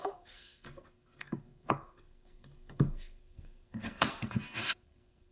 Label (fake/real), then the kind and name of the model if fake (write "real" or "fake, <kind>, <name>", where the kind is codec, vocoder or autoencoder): fake, codec, SNAC